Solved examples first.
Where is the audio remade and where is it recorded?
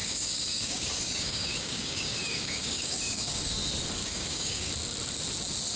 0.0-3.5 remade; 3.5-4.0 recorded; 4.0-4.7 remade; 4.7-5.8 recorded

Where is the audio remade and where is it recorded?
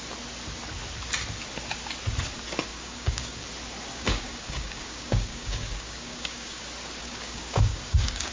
0.0-2.7 recorded; 2.7-3.5 remade; 3.5-3.9 recorded; 3.9-6.6 remade; 6.6-7.0 recorded; 7.0-8.3 remade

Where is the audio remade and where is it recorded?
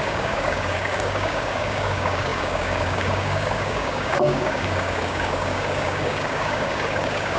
0.0-7.4 remade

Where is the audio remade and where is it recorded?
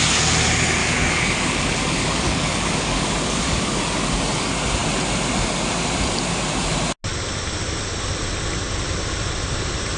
0.0-0.8 recorded; 0.8-3.8 remade; 3.8-10.0 recorded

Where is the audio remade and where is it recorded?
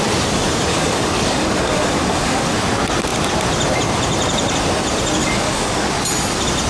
0.0-0.7 recorded; 0.7-2.6 remade; 2.6-5.2 recorded; 5.2-5.9 remade; 5.9-6.7 recorded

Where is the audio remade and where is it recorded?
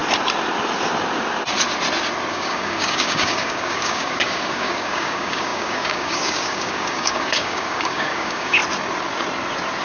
0.0-2.3 recorded; 2.3-8.6 remade; 8.6-9.8 recorded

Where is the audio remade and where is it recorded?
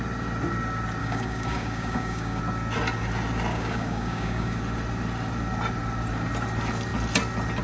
0.0-1.0 recorded; 1.0-2.4 remade; 2.4-3.5 recorded; 3.5-4.6 remade; 4.6-7.6 recorded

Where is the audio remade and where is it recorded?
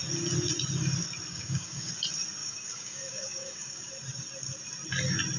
0.0-1.3 recorded; 1.3-1.9 remade; 1.9-2.4 recorded; 2.4-3.9 remade; 3.9-5.4 recorded